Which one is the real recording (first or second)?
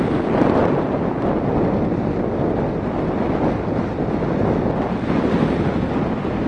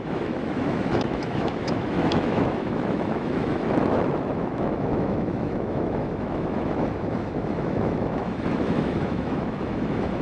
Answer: first